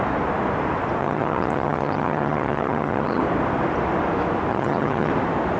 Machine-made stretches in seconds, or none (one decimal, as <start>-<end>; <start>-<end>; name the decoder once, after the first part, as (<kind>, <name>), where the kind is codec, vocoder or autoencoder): 1.0-3.2 (vocoder, HiFi-GAN); 4.5-5.1